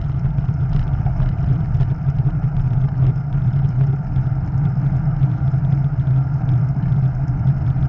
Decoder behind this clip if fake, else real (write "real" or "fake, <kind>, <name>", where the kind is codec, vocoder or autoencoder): fake, vocoder, BigVGAN v2